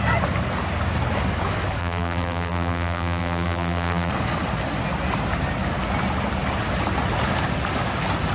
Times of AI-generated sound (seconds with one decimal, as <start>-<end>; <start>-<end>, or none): 1.8-4.1